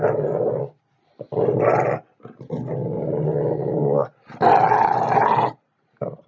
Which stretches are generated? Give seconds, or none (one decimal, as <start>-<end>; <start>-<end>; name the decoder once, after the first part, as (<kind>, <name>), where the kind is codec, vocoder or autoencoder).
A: none